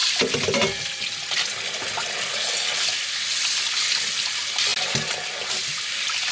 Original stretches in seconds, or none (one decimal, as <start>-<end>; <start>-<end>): 0.0-6.3